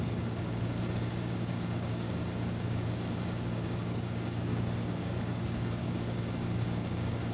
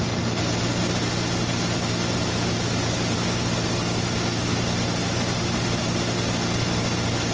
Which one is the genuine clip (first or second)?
second